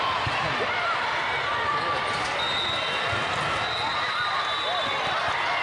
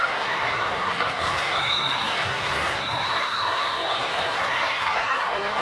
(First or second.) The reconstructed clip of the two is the second